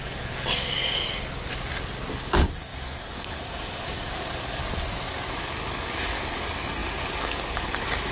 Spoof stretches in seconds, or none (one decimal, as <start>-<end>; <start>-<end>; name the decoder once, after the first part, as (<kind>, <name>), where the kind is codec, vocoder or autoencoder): 0.0-1.0 (codec, DAC); 2.1-4.6; 5.1-8.1